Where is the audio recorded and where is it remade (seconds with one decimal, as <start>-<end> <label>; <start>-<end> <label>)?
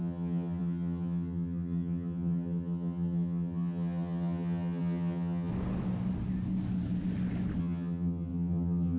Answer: 0.0-5.5 remade; 5.5-7.6 recorded; 7.6-9.0 remade